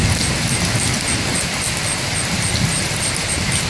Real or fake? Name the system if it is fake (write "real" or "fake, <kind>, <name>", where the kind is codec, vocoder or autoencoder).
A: real